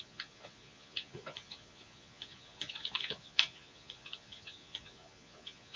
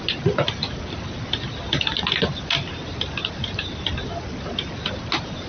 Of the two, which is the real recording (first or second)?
second